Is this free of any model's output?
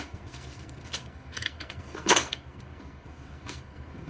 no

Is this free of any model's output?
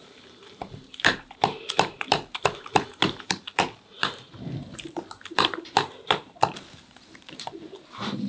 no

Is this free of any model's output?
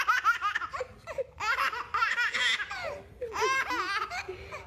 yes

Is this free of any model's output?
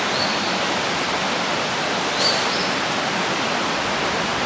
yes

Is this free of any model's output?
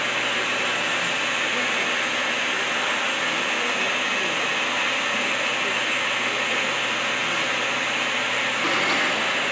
yes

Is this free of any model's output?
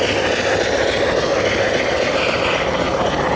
yes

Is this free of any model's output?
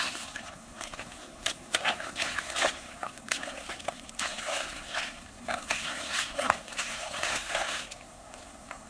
no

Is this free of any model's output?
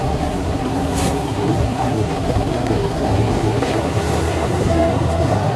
no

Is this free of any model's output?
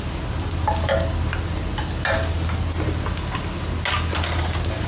yes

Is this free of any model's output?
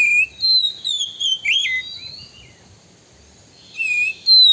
yes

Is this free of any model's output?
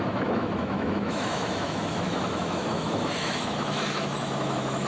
no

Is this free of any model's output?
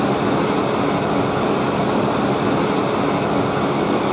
yes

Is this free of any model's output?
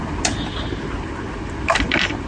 yes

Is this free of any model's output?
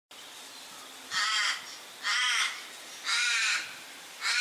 yes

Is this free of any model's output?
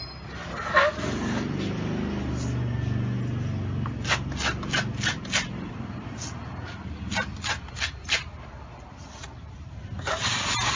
yes